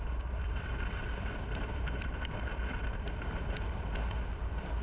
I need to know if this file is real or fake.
fake